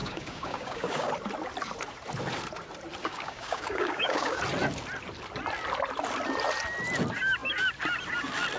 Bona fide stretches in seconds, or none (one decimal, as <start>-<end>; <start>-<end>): 1.1-3.0; 4.4-8.6